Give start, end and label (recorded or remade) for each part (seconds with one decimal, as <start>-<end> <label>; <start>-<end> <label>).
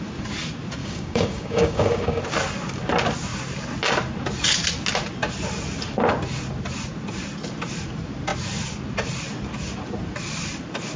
0.0-0.8 recorded; 0.8-2.2 remade; 2.2-11.0 recorded